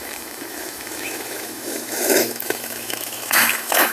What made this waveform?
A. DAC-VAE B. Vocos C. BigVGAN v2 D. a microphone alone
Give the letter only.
A